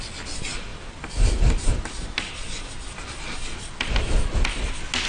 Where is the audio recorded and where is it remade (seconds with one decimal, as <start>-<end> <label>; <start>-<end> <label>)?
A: 0.0-5.1 recorded